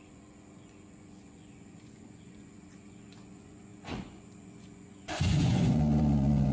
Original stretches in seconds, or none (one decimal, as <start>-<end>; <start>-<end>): none